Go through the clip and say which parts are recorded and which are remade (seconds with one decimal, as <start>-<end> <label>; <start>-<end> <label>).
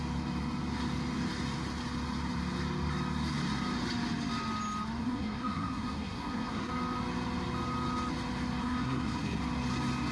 0.0-5.0 recorded; 5.0-6.7 remade; 6.7-8.6 recorded; 8.6-9.4 remade; 9.4-10.1 recorded